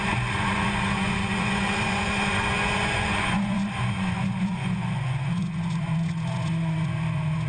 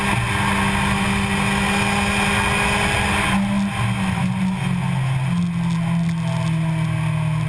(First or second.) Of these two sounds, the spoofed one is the first